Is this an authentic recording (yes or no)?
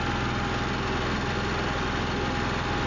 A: yes